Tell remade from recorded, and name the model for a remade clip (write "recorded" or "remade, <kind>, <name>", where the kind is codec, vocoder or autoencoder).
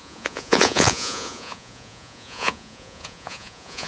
remade, vocoder, Vocos